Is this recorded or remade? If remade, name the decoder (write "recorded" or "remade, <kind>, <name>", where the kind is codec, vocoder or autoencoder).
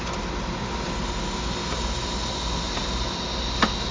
recorded